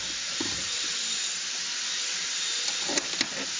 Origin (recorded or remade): recorded